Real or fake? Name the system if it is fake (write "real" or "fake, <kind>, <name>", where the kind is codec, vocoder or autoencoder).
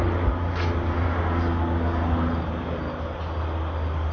real